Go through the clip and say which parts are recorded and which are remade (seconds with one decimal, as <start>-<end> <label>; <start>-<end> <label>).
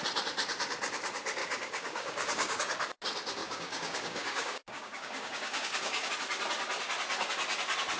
0.0-1.4 recorded; 1.4-2.6 remade; 2.6-3.4 recorded; 3.4-6.1 remade; 6.1-8.0 recorded